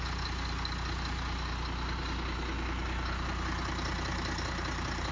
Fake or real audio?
real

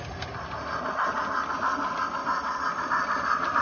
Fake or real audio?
real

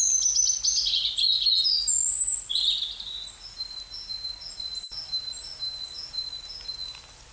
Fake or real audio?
real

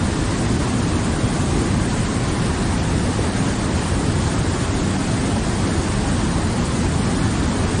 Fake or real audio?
real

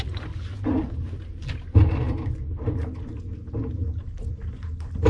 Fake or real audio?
real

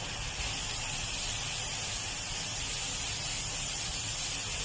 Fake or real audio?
real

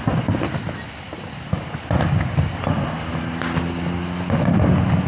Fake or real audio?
real